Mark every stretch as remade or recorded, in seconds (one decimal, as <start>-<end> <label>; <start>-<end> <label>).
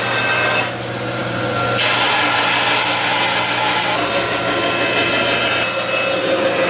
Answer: 0.0-6.7 recorded